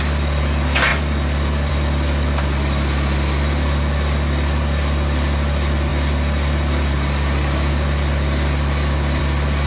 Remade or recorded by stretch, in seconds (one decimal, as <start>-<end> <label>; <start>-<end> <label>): 0.0-9.7 recorded